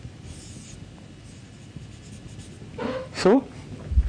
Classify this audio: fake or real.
real